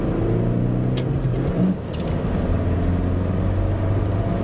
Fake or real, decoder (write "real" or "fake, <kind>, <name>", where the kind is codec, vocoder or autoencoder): real